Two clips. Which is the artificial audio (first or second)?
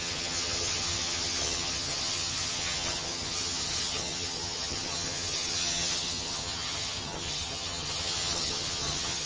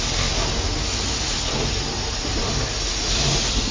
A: first